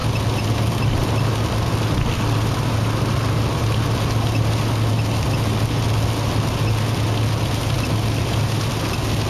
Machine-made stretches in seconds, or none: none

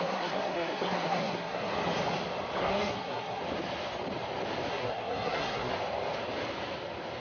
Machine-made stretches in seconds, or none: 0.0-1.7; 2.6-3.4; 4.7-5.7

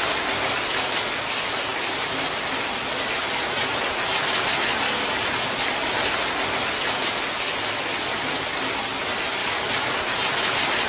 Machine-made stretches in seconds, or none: 9.4-10.0